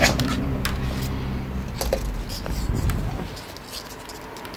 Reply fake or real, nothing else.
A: real